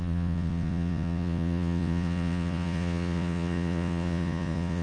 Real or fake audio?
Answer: fake